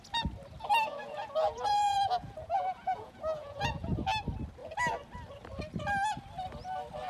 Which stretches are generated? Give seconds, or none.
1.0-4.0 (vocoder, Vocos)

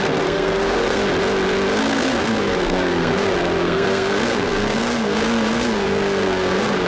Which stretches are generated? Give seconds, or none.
0.0-1.0 (codec, SNAC); 1.8-6.9

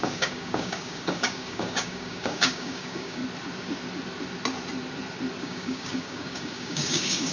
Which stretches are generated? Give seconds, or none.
0.0-3.2 (codec, DAC); 5.4-7.3

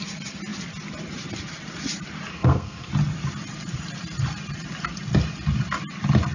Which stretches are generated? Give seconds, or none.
2.3-2.9 (codec, SNAC)

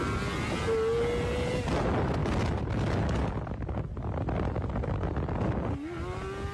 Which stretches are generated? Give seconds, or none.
none

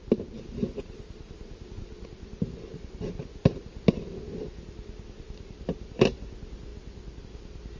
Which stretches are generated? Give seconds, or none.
none